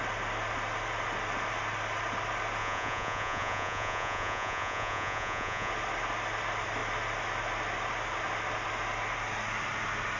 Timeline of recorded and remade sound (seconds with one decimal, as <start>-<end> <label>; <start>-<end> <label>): 0.0-2.6 recorded; 2.6-5.7 remade; 5.7-10.2 recorded